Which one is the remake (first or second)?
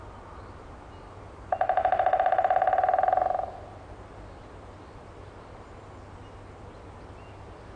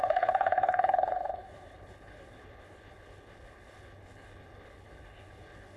second